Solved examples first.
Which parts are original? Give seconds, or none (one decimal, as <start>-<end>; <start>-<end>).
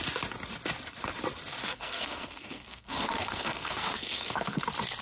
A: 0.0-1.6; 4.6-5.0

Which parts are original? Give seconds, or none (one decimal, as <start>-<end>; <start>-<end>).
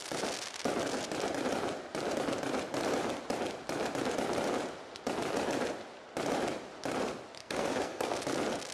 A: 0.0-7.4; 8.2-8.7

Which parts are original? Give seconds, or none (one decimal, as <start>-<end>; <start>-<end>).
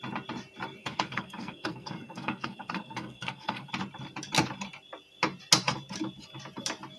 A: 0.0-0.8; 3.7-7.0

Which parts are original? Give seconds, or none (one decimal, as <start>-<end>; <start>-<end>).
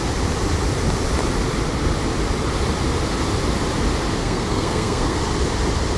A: 0.0-4.2; 5.2-6.0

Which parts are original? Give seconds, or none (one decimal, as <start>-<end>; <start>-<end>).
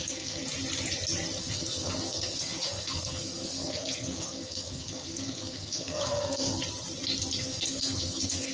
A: 0.4-1.4; 6.6-7.4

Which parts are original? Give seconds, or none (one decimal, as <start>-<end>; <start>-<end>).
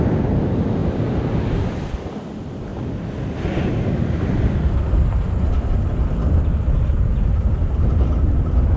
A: 0.0-8.8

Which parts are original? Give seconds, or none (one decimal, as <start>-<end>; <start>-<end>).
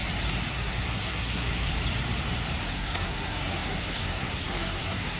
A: 0.0-0.5; 1.7-2.7